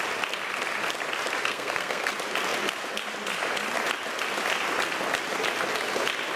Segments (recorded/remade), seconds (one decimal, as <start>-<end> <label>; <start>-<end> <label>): 0.0-1.4 recorded; 1.4-2.1 remade; 2.1-6.4 recorded